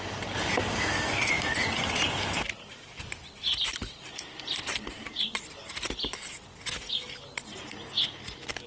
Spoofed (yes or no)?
no